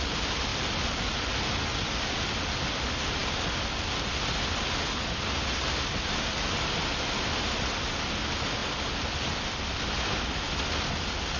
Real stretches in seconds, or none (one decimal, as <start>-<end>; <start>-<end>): 0.0-11.4